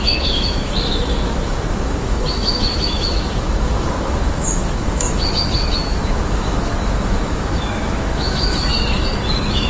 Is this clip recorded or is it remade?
remade